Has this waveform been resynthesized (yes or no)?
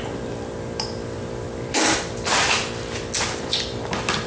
no